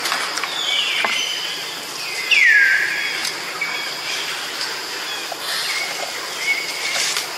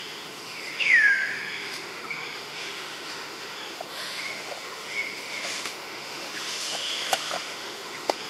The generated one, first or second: second